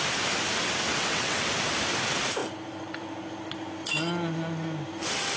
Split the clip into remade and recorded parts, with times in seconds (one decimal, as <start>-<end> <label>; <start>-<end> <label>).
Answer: 0.0-0.9 recorded; 0.9-1.5 remade; 1.5-5.4 recorded